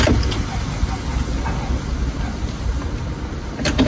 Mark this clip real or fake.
real